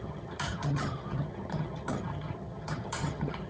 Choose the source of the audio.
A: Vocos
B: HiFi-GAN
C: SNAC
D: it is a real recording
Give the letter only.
B